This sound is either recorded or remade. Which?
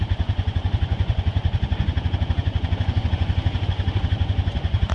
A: remade